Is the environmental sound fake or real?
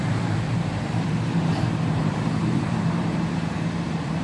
fake